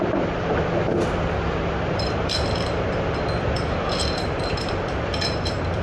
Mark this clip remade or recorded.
recorded